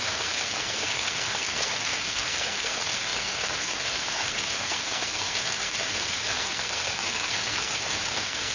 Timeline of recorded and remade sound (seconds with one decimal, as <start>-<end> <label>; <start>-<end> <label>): 0.0-8.5 remade